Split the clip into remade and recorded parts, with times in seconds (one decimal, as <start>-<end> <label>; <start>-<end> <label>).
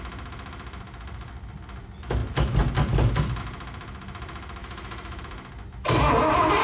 0.0-4.6 recorded; 4.6-5.2 remade; 5.2-6.6 recorded